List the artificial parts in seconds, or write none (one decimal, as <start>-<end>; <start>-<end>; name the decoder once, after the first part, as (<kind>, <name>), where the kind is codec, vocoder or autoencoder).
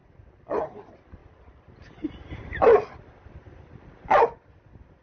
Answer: none